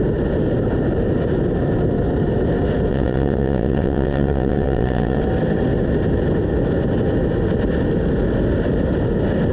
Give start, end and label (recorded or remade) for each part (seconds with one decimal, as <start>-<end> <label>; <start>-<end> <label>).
0.0-2.9 recorded; 2.9-5.2 remade; 5.2-9.5 recorded